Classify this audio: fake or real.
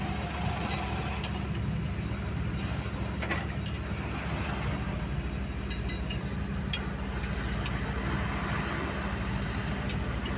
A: real